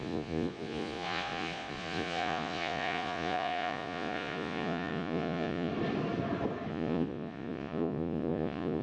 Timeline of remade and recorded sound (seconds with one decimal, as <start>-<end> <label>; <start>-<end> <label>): 0.0-5.7 remade; 5.7-6.7 recorded; 6.7-8.8 remade